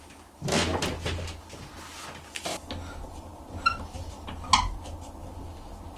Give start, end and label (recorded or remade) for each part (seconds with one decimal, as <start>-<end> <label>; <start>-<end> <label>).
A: 0.0-6.0 recorded